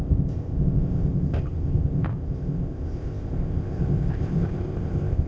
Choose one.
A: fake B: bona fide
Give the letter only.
A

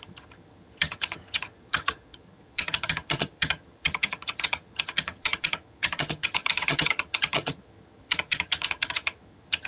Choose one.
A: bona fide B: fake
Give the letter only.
B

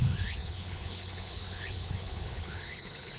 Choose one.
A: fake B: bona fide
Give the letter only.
A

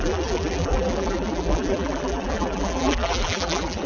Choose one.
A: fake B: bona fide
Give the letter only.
A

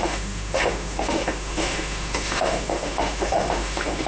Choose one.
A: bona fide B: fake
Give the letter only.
B